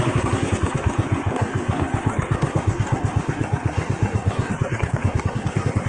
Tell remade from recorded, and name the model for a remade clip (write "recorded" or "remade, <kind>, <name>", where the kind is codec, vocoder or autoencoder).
remade, codec, SNAC